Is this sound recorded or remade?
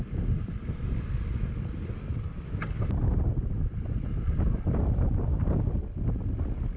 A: recorded